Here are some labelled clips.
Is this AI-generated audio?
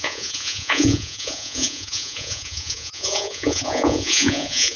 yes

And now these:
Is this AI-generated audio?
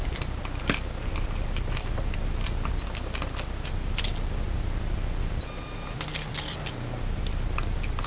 no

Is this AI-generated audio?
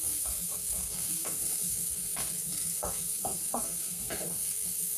yes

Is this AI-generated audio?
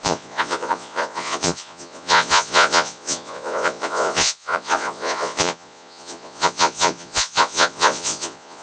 yes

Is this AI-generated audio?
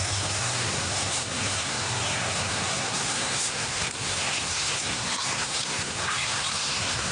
yes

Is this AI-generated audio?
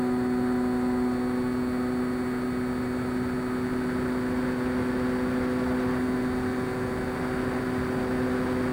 no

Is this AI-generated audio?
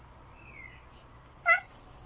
no